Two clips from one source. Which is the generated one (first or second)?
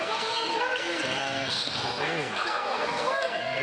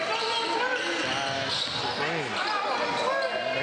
first